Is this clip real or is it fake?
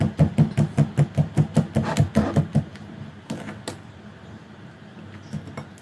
real